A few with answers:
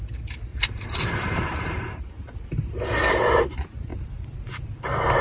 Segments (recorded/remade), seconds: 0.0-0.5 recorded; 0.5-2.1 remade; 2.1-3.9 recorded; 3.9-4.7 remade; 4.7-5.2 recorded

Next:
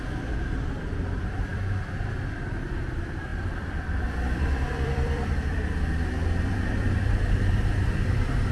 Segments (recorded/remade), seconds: 0.0-8.5 remade